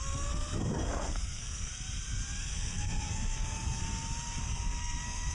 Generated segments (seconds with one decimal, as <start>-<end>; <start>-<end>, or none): 0.0-1.7; 2.4-3.8; 4.4-5.3